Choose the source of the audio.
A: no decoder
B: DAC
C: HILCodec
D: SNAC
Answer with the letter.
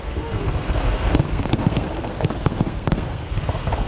D